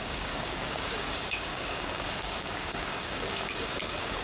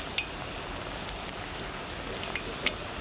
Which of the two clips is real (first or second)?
second